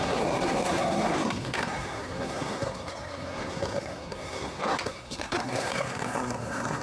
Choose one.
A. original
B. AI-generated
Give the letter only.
B